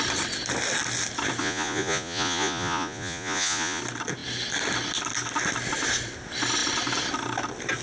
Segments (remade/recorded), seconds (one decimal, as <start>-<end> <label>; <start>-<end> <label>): 0.0-1.4 recorded; 1.4-3.8 remade; 3.8-7.8 recorded